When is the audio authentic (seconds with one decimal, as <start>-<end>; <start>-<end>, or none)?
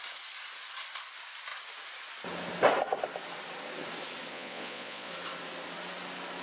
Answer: 0.0-4.3; 5.1-6.4